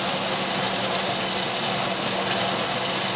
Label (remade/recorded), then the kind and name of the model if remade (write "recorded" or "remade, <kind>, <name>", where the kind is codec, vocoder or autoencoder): recorded